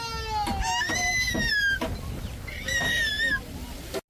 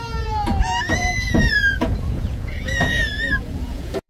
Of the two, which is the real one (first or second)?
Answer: first